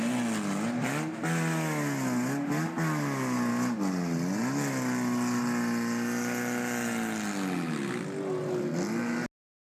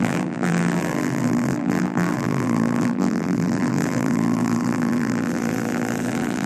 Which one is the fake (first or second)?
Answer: second